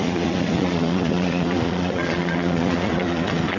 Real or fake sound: fake